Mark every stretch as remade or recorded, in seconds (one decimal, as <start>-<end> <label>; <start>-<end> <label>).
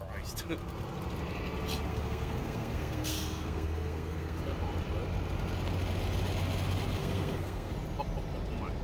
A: 0.0-1.9 recorded; 1.9-4.4 remade; 4.4-7.0 recorded; 7.0-7.7 remade; 7.7-8.8 recorded